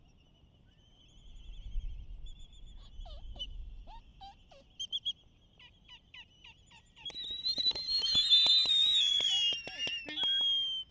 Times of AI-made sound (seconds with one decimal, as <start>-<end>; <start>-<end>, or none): none